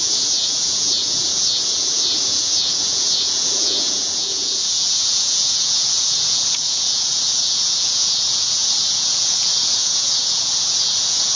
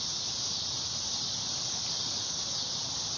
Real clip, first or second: second